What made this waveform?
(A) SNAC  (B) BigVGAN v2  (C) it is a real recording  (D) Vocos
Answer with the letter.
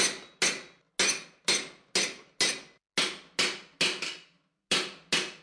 C